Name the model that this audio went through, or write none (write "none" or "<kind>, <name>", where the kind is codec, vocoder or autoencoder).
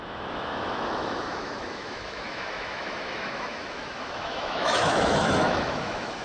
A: autoencoder, DAC-VAE